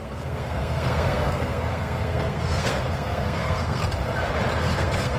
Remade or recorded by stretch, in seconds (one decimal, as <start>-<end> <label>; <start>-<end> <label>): 0.0-3.8 remade; 3.8-4.6 recorded; 4.6-5.2 remade